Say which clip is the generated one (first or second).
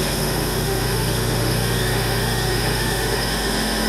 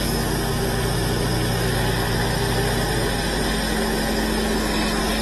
first